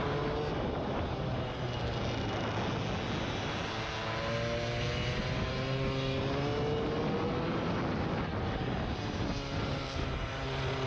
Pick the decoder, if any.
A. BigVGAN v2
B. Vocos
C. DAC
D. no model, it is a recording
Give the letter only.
D